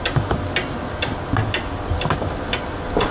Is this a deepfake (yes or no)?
no